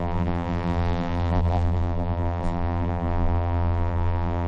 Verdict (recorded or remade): remade